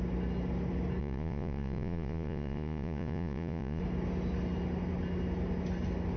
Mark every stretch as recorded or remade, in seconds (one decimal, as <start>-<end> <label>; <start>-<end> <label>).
0.0-1.0 recorded; 1.0-3.8 remade; 3.8-6.2 recorded